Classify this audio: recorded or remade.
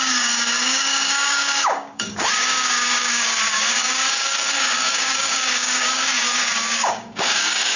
remade